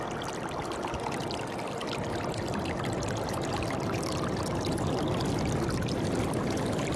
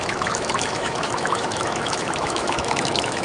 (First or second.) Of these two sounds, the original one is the first